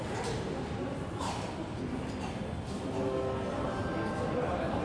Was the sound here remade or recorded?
recorded